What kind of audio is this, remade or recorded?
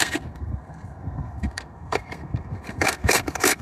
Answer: remade